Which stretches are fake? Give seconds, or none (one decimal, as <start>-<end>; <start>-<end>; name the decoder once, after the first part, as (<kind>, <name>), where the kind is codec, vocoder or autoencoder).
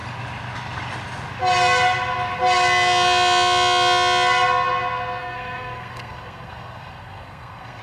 5.2-7.8 (codec, SNAC)